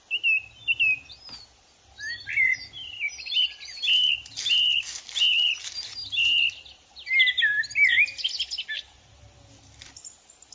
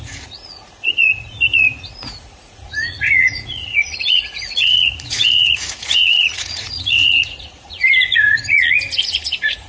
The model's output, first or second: second